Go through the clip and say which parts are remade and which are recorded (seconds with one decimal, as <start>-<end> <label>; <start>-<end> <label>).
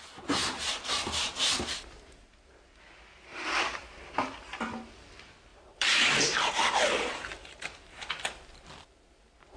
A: 0.0-0.4 recorded; 0.4-3.0 remade; 3.0-5.5 recorded; 5.5-8.1 remade; 8.1-9.6 recorded